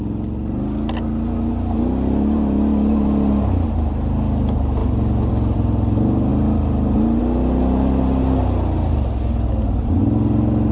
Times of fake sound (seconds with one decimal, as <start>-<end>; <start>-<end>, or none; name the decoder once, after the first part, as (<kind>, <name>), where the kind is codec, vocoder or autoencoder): none